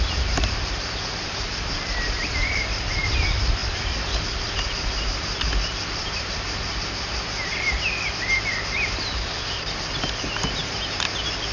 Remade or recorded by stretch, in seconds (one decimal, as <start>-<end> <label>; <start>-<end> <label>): 0.0-3.6 remade; 3.6-4.2 recorded; 4.2-11.5 remade